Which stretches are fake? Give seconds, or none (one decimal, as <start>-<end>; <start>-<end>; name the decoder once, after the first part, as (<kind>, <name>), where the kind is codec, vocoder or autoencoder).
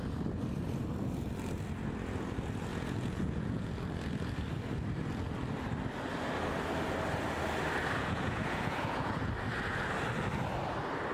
2.7-3.6 (vocoder, Vocos); 8.0-9.3